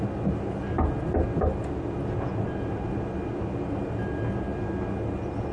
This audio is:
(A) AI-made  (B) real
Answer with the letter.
B